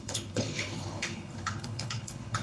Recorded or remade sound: remade